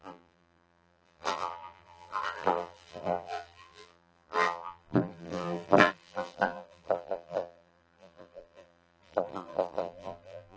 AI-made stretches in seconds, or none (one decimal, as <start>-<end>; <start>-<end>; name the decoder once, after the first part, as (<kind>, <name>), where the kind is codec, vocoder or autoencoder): 0.0-10.6 (vocoder, BigVGAN v2)